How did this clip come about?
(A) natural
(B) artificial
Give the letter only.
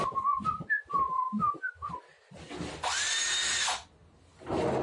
A